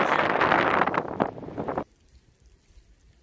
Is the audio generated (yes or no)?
yes